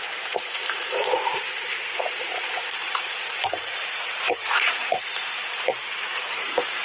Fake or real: fake